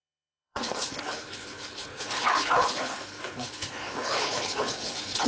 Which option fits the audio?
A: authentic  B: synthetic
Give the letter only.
B